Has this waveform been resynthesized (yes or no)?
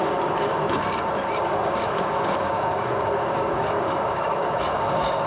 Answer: yes